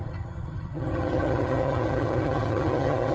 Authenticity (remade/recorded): remade